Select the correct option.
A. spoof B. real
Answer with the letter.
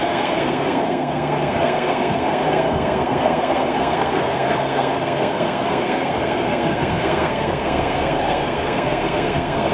A